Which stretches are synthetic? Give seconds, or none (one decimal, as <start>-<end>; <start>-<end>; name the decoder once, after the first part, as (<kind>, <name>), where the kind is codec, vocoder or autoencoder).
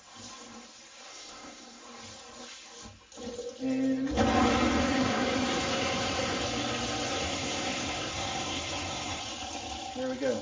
1.1-1.8 (codec, SNAC); 4.8-6.4; 7.1-9.2